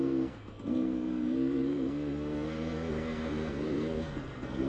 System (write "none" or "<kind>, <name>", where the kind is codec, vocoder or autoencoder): codec, SNAC